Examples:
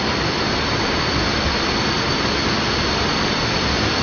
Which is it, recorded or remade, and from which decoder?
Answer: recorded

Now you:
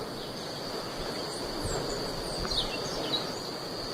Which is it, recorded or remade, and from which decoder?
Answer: recorded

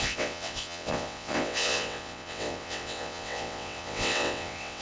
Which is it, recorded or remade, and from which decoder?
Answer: remade, vocoder, WaveNeXt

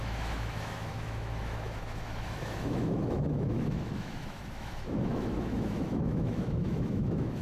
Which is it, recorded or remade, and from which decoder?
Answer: remade, autoencoder, DAC-VAE